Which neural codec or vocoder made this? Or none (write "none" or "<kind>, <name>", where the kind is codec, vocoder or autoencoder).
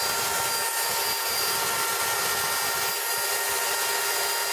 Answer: none